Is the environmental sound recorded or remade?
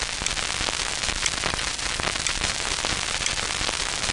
recorded